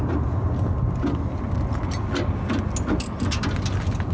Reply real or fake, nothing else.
real